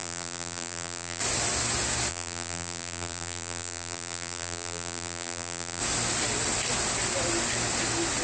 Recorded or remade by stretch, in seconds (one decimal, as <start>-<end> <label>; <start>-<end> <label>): 0.0-1.2 remade; 1.2-2.1 recorded; 2.1-5.8 remade; 5.8-8.2 recorded